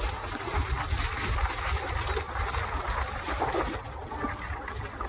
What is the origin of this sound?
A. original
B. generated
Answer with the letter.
A